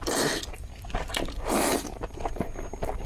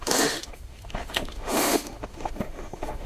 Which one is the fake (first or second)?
second